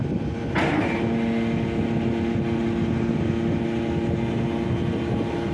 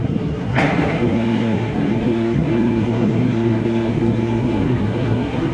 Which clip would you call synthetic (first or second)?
second